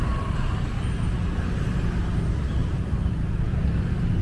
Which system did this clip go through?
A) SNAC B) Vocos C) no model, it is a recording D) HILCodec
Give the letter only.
C